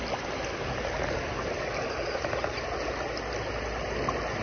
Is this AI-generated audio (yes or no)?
no